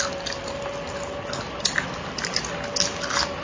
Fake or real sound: real